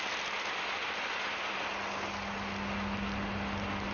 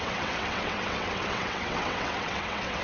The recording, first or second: first